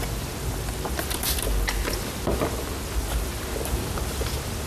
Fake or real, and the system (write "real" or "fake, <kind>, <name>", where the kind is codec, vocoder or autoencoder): real